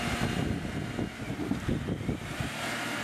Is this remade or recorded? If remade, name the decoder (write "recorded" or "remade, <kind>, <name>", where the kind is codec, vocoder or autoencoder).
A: recorded